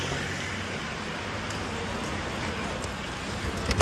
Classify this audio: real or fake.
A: real